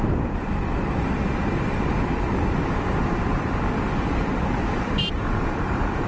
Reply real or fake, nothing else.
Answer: fake